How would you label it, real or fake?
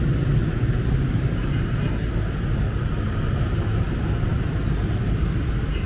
real